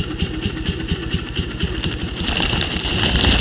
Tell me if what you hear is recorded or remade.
remade